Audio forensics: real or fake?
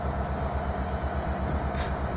real